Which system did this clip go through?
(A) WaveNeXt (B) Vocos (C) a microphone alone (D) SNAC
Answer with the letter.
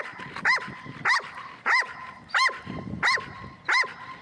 C